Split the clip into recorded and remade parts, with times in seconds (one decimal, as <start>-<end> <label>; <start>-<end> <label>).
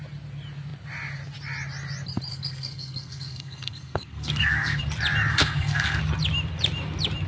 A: 0.0-2.3 recorded; 2.3-4.8 remade; 4.8-5.3 recorded; 5.3-6.0 remade; 6.0-7.3 recorded